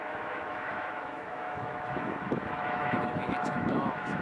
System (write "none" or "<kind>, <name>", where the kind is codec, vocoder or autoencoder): autoencoder, DAC-VAE